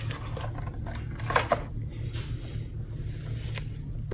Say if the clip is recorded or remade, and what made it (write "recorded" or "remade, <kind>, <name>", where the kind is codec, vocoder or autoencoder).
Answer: recorded